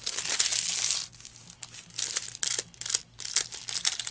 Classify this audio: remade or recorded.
recorded